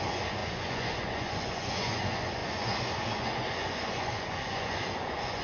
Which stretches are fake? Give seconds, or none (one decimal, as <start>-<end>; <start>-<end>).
0.0-5.4